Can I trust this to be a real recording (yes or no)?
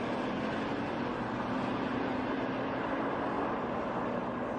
yes